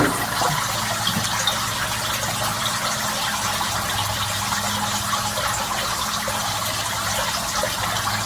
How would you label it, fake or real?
real